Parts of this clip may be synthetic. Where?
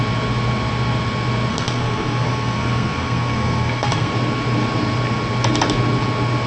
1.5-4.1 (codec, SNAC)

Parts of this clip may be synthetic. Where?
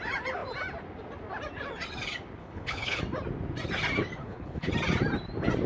2.4-3.0 (codec, HILCodec); 4.2-4.7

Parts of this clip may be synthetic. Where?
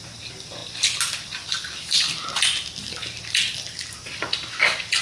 none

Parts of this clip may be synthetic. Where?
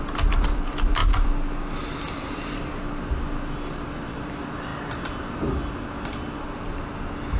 none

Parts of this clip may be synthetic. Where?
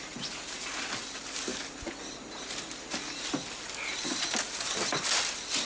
none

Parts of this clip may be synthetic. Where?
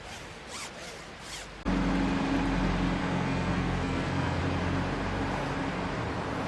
3.0-4.4 (codec, SNAC)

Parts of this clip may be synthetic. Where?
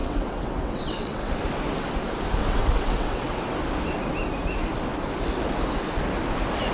0.0-1.3 (vocoder, WaveNeXt); 2.4-3.4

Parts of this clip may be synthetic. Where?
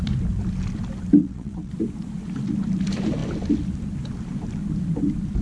1.2-1.7 (vocoder, WaveNeXt)